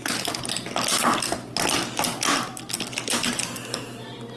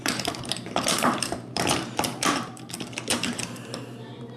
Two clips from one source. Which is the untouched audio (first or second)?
first